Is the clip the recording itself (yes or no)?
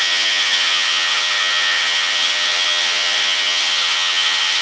no